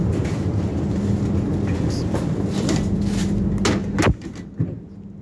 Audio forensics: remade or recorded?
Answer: recorded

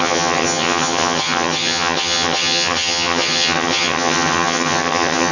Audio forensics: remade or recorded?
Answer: remade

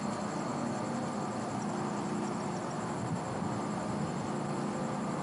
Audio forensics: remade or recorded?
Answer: recorded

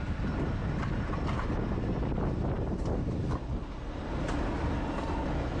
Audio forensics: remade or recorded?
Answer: recorded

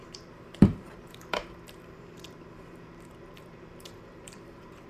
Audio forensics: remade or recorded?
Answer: remade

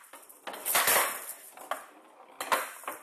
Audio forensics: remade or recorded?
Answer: recorded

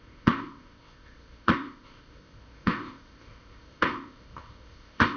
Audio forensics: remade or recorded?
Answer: remade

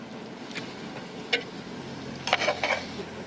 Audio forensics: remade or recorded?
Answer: recorded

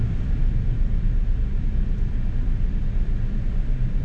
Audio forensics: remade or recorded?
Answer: recorded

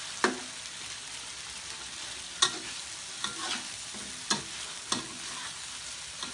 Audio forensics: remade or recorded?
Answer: recorded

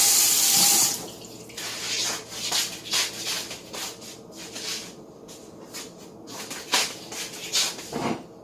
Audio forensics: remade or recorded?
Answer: recorded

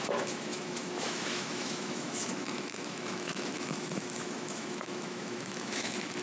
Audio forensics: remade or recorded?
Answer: remade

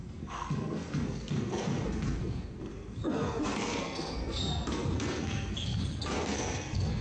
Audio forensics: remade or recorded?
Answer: remade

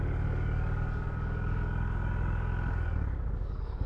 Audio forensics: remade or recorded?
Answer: remade